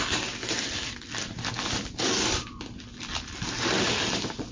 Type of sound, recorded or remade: recorded